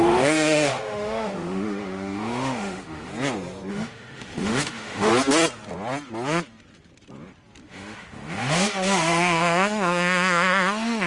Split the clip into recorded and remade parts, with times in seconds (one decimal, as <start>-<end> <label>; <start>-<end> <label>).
0.0-3.1 remade; 3.1-3.7 recorded; 3.7-5.1 remade; 5.1-7.6 recorded; 7.6-11.1 remade